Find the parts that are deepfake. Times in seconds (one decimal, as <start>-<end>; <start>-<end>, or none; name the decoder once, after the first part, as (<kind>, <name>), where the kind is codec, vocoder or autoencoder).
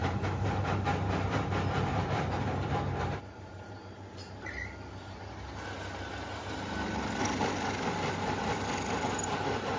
0.0-4.7 (vocoder, BigVGAN v2)